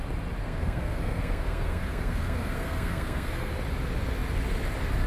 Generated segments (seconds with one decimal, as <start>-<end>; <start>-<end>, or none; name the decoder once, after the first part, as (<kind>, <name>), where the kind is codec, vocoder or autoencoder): 0.4-3.5 (codec, SNAC)